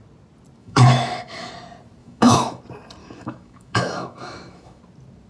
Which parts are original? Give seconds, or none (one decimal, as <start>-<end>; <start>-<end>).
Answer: 0.0-0.6; 1.5-2.0; 2.6-3.0; 4.8-5.3